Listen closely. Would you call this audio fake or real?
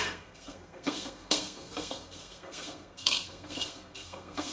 fake